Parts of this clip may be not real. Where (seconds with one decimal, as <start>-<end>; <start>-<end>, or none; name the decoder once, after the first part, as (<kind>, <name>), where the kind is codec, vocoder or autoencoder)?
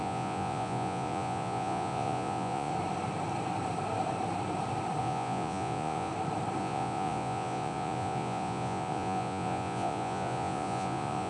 0.0-2.7 (vocoder, Vocos); 5.0-6.1; 6.6-11.3